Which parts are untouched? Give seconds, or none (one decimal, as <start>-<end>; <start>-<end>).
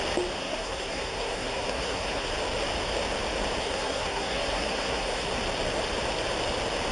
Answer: 0.0-0.4; 2.3-3.6; 5.3-6.9